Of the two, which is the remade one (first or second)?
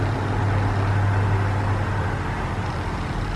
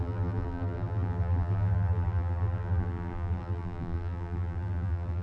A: second